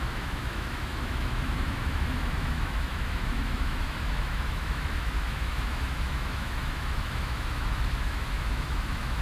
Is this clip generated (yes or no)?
yes